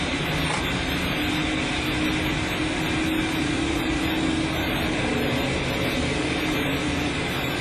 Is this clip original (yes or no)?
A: yes